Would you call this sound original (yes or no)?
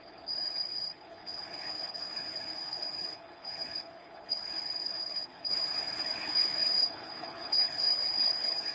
no